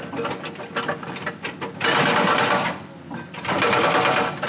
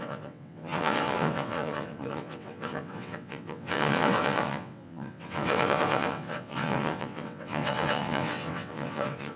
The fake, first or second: second